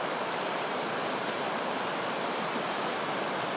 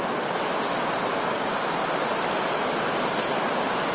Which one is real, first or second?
second